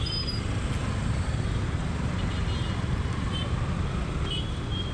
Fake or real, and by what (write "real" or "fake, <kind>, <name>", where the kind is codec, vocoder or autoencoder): real